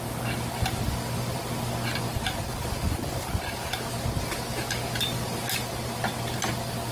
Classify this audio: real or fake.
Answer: real